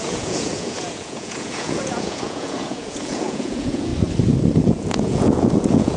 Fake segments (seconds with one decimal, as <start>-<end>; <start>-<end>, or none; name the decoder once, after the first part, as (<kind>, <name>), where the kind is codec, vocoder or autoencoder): 0.0-3.9 (vocoder, Vocos); 4.6-6.0

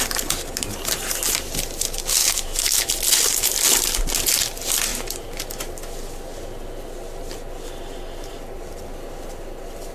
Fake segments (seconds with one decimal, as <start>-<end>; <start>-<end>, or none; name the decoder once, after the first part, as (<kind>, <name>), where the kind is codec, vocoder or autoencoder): 2.2-2.9 (autoencoder, DAC-VAE)

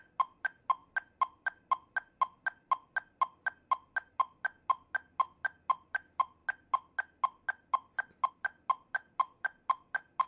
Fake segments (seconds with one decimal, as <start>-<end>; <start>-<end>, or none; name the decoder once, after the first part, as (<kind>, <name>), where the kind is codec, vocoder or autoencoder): none